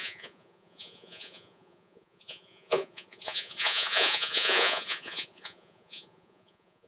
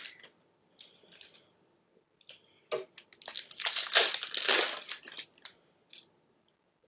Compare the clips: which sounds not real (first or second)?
first